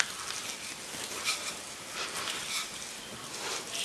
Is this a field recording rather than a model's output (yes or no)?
yes